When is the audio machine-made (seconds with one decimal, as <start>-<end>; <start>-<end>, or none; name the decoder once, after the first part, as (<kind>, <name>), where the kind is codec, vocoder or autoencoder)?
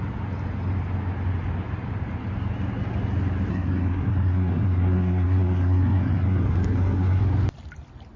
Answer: 3.5-7.2 (codec, SNAC)